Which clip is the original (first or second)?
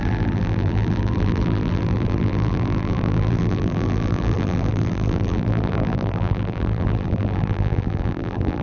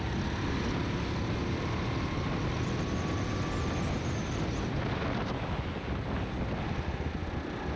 second